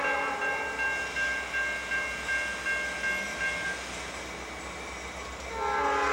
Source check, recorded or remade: recorded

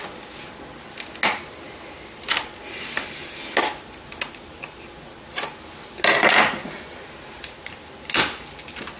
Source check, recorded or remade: recorded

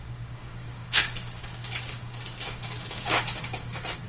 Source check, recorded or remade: remade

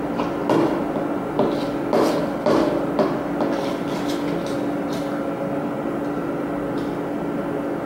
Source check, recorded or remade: recorded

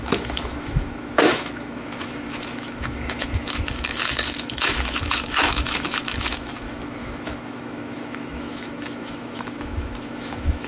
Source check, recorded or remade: remade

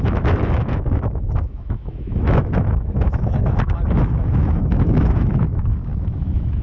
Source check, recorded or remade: remade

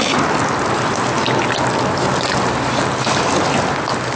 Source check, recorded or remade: recorded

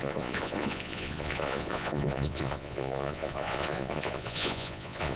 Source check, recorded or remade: remade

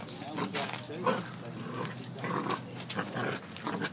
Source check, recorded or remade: recorded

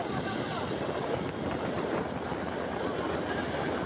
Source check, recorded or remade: recorded